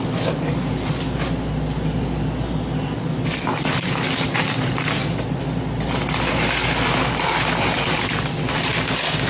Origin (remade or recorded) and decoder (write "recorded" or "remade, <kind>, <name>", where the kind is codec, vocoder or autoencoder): recorded